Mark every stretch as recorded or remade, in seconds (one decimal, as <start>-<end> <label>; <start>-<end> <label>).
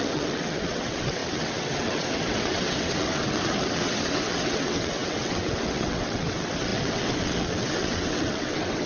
0.0-8.9 remade